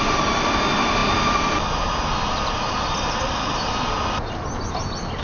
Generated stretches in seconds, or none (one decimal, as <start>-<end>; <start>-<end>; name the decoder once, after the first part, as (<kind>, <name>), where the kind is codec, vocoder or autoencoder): none

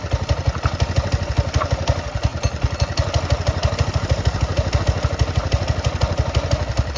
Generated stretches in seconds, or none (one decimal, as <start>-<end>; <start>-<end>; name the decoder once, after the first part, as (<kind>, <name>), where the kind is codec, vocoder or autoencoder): none

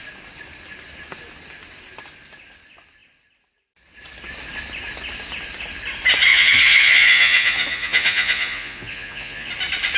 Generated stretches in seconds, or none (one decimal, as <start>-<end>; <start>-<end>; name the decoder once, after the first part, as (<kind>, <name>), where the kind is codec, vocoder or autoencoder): 6.3-9.5 (vocoder, Vocos)

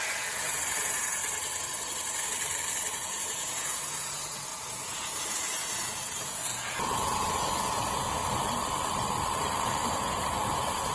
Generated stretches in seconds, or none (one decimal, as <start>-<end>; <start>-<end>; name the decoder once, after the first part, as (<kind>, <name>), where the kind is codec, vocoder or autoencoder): 0.0-1.2 (vocoder, Vocos); 2.9-8.2; 9.9-10.9

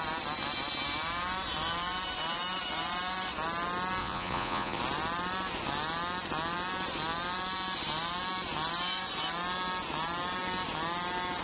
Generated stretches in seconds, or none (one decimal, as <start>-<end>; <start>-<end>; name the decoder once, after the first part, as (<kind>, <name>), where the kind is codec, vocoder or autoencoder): 4.0-4.8 (vocoder, Vocos)

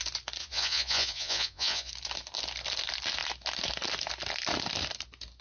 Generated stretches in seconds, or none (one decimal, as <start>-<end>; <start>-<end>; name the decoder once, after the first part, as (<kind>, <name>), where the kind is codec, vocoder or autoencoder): 0.4-1.9 (vocoder, Vocos)